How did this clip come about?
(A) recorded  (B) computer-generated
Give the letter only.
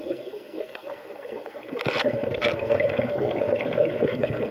B